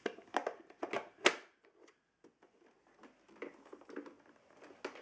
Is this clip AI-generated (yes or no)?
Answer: no